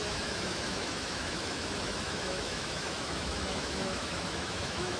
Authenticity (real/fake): fake